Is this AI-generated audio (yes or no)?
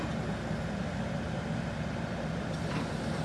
no